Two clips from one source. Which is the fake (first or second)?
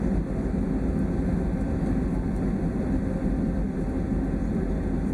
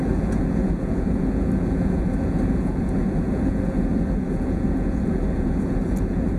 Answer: second